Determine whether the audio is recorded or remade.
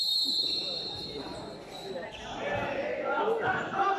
recorded